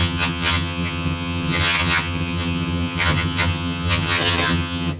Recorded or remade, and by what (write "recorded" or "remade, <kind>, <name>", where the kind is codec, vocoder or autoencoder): remade, vocoder, HiFi-GAN